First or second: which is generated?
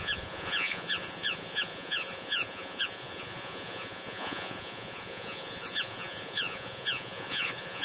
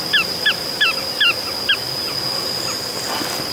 first